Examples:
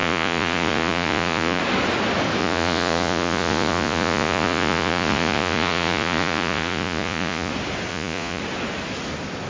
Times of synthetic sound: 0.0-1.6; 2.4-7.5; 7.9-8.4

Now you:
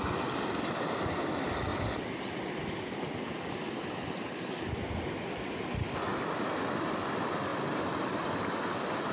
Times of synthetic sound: none

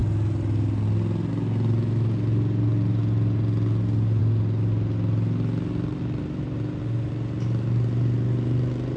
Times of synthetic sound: none

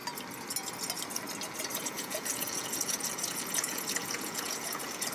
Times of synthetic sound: 1.8-5.1

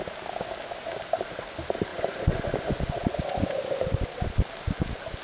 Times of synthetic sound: 1.9-4.0

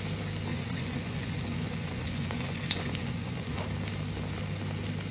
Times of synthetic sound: 0.5-3.6

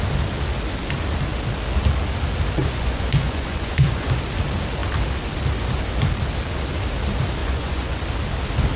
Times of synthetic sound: 2.6-4.2; 7.4-8.0

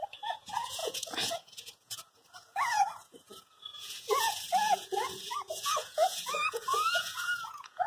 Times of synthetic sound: 0.0-7.9